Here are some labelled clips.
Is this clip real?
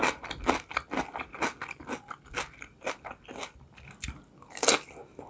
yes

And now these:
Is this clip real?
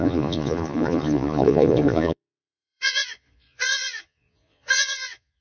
no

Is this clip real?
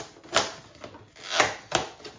yes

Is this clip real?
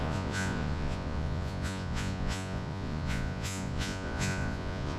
no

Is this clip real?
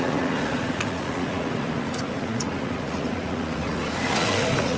no